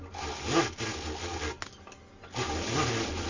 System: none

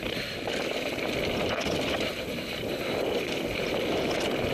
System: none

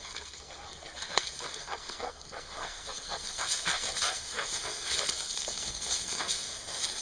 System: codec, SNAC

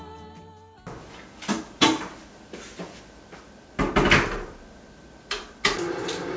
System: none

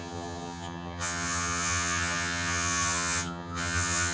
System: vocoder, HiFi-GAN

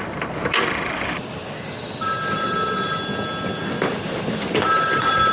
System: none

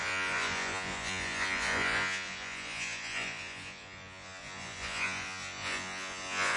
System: vocoder, Vocos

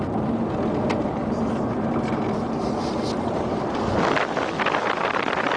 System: none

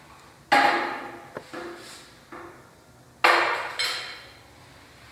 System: none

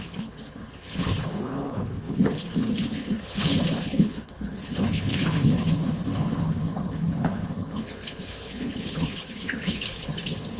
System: codec, HILCodec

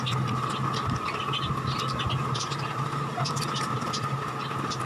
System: none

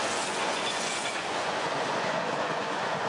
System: vocoder, Vocos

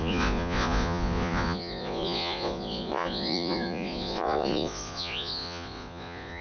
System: vocoder, Vocos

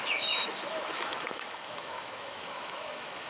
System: autoencoder, DAC-VAE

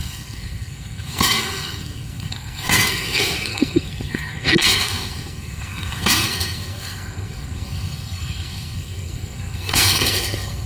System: codec, SNAC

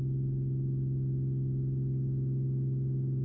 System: none